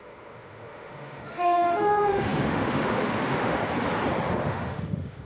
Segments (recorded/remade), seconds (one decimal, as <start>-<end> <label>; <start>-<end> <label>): 0.0-3.6 remade; 3.6-4.3 recorded; 4.3-5.3 remade